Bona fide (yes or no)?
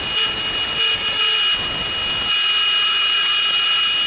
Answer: yes